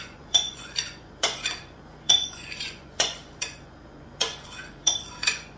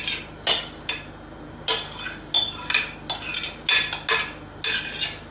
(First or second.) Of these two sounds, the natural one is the second